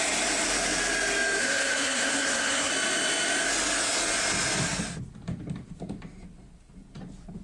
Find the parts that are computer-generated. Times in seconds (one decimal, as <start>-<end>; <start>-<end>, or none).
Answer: 1.4-2.7